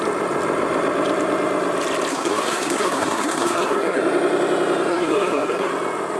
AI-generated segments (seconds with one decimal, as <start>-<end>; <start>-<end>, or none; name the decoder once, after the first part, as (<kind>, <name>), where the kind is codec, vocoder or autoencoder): 2.1-4.0 (codec, SNAC); 4.9-5.7